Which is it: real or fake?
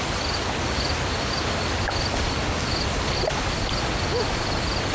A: real